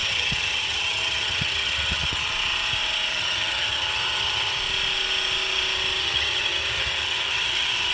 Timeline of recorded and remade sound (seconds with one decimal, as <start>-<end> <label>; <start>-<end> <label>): 0.0-2.3 remade; 2.3-3.1 recorded; 3.1-4.6 remade; 4.6-6.0 recorded; 6.0-7.9 remade